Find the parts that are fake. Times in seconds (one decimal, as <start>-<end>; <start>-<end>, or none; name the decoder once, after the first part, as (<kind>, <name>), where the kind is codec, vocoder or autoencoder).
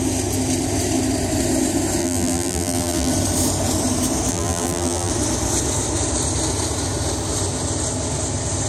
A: 2.0-3.1 (vocoder, BigVGAN v2); 4.3-5.1